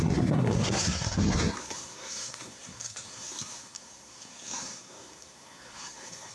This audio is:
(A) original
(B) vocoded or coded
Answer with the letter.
B